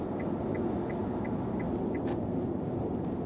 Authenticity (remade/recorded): recorded